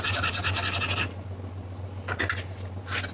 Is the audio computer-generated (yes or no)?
no